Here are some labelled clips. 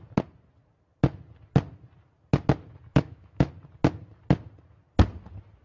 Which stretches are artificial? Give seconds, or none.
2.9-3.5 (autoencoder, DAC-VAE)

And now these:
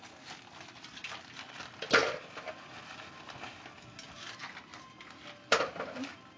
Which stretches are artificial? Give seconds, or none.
none

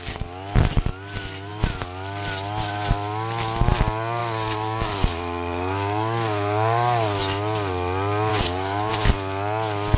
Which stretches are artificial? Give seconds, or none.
4.2-7.2 (codec, DAC); 8.3-8.9